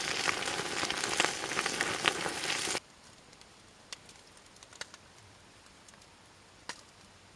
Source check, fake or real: fake